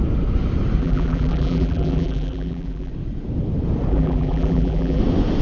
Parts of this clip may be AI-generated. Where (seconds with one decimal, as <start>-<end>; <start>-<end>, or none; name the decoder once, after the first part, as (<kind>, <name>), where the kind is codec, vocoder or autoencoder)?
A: 0.8-2.9 (vocoder, BigVGAN v2); 3.9-5.0